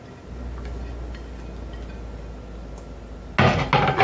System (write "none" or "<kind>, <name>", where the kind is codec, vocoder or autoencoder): none